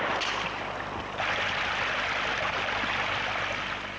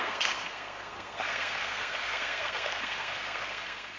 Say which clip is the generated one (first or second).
second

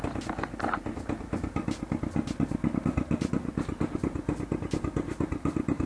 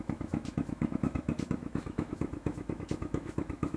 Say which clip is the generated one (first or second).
second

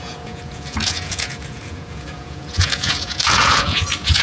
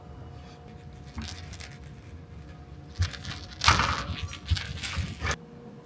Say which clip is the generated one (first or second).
first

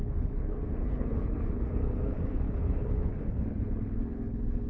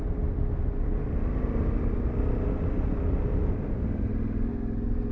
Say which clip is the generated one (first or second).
first